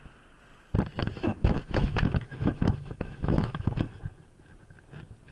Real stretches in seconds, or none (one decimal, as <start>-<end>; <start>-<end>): 0.0-1.0; 4.0-5.3